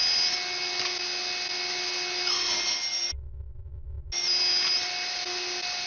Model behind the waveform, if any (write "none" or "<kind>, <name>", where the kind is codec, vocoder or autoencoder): none